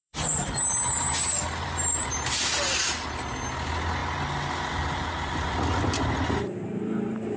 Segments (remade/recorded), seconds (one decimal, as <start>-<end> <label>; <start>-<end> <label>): 0.0-2.1 remade; 2.1-7.4 recorded